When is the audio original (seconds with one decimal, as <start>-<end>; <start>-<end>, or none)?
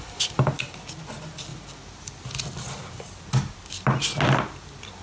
0.0-5.0